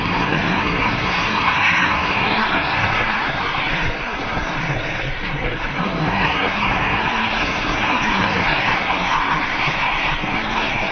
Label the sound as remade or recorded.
remade